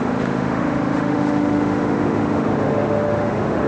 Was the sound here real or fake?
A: fake